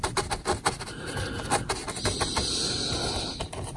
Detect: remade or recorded recorded